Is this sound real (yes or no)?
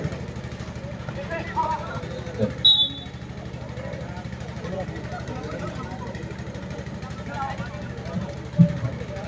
yes